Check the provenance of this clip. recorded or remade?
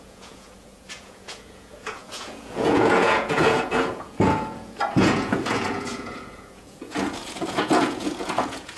remade